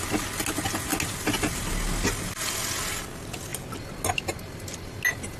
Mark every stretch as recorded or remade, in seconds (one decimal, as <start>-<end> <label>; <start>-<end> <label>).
0.0-5.4 recorded